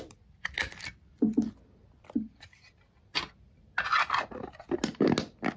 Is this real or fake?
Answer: real